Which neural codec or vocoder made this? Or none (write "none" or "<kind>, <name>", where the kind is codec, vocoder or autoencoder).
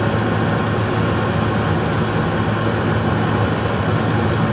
none